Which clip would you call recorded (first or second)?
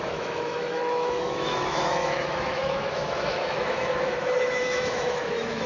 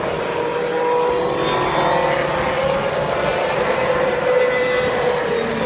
second